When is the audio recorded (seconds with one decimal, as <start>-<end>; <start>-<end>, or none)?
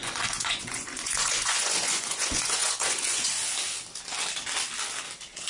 3.3-5.5